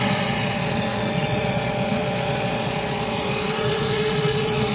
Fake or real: fake